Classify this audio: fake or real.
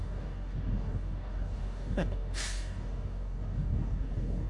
fake